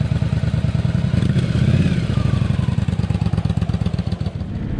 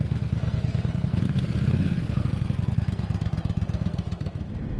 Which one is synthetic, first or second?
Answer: second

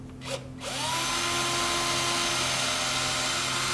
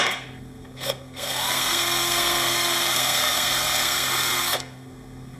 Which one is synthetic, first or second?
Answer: second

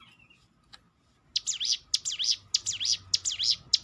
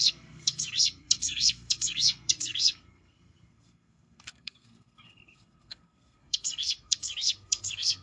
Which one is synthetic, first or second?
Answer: second